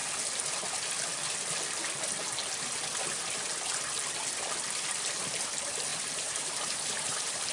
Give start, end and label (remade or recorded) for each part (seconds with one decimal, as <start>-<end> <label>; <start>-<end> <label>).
0.0-5.9 recorded; 5.9-7.5 remade